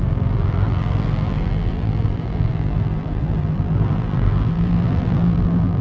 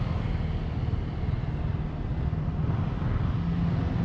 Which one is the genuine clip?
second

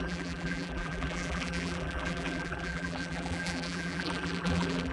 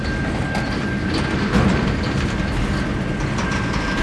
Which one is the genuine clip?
second